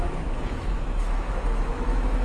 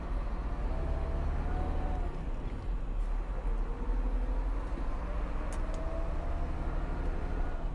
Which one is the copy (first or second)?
first